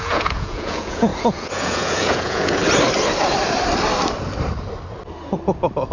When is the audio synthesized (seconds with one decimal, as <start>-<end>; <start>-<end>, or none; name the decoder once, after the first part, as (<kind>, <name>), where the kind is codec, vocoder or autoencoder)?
0.0-2.6 (vocoder, Vocos)